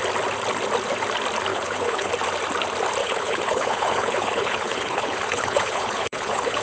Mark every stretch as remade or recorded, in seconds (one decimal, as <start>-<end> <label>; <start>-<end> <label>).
0.0-1.5 recorded; 1.5-2.1 remade; 2.1-3.0 recorded; 3.0-6.6 remade